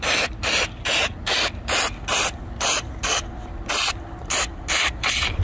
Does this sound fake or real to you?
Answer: real